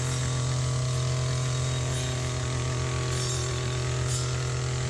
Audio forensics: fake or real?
real